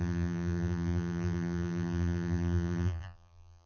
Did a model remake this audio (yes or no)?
yes